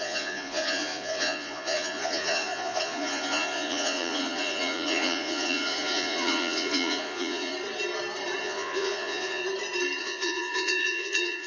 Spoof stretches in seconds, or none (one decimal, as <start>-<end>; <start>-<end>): 0.0-7.5; 8.4-9.4; 10.0-11.5